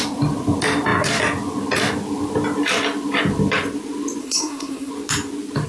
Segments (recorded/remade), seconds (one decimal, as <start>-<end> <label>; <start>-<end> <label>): 0.0-4.2 recorded; 4.2-4.9 remade; 4.9-5.7 recorded